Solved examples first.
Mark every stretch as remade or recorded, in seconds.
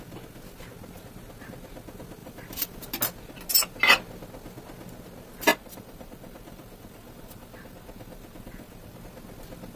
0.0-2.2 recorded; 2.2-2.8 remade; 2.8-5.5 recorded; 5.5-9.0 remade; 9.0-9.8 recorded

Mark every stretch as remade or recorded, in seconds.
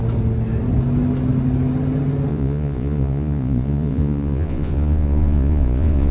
0.0-2.3 recorded; 2.3-6.1 remade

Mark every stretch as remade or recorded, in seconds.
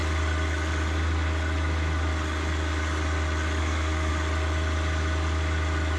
0.0-3.6 recorded; 3.6-4.1 remade; 4.1-6.0 recorded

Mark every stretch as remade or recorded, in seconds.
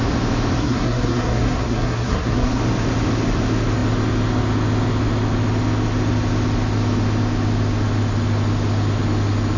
0.0-0.6 recorded; 0.6-2.6 remade; 2.6-9.6 recorded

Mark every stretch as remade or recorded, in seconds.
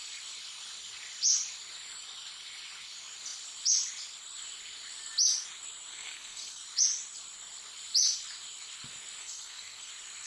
0.0-5.9 recorded; 5.9-6.6 remade; 6.6-9.2 recorded; 9.2-9.9 remade; 9.9-10.3 recorded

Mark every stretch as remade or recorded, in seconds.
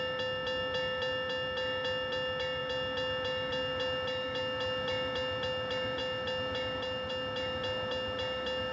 0.0-8.7 recorded